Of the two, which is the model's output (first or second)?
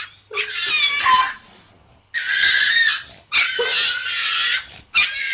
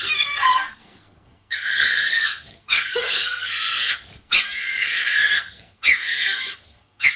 second